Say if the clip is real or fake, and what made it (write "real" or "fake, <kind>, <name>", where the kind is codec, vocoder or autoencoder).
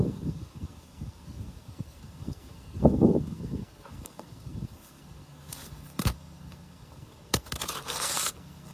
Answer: fake, codec, SNAC